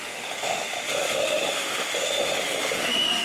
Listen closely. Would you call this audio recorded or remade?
remade